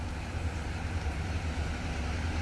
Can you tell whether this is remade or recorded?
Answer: recorded